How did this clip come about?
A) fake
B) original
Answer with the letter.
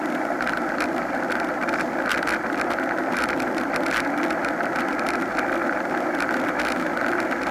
B